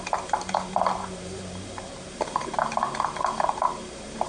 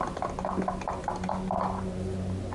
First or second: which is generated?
first